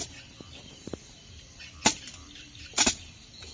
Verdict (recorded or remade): recorded